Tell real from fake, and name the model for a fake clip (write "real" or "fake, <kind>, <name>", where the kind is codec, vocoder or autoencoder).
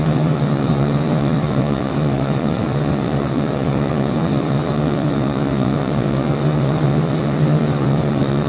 fake, vocoder, WaveNeXt